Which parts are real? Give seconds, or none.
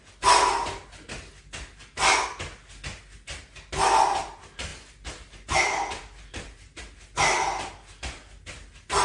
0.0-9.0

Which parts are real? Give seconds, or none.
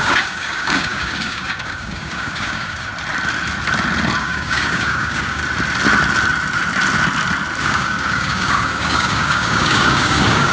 2.9-4.2; 5.4-7.6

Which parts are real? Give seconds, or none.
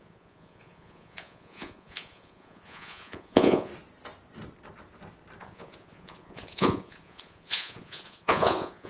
3.7-5.4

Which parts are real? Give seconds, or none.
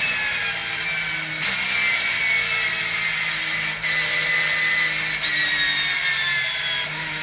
0.0-7.2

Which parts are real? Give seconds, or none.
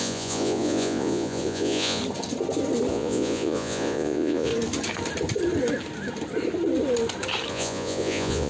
2.0-2.9; 4.5-7.5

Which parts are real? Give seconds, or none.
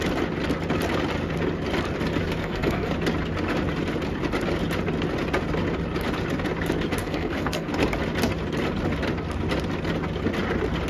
0.0-2.4; 2.9-7.0; 7.7-10.9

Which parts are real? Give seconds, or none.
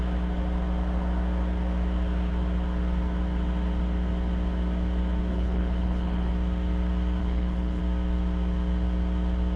0.0-5.3; 6.3-7.2; 7.8-9.6